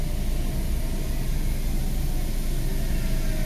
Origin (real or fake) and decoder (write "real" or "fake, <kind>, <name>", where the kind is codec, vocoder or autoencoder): real